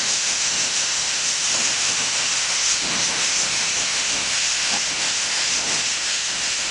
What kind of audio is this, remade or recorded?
remade